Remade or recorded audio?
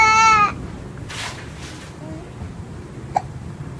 recorded